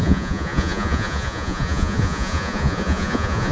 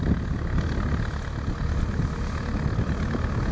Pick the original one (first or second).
second